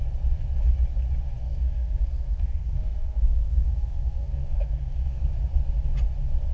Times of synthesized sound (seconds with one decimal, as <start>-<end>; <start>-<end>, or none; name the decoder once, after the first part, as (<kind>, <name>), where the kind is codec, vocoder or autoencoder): 1.4-5.3 (codec, SNAC)